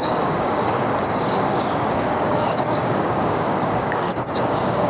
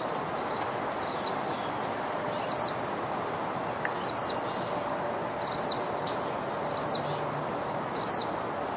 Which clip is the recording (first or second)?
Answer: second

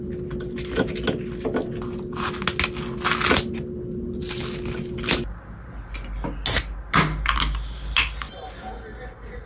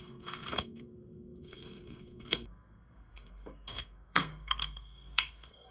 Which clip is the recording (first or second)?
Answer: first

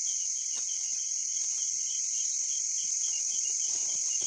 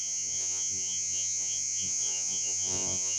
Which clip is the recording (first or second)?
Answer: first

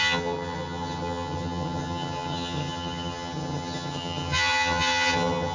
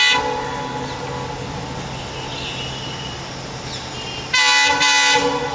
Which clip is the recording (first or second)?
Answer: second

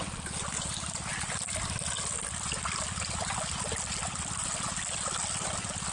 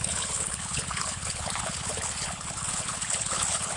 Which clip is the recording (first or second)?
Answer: first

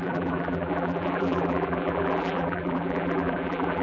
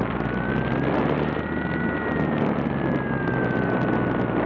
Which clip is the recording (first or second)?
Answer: second